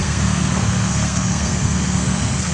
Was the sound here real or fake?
fake